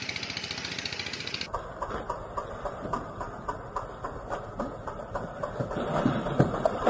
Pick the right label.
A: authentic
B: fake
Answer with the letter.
A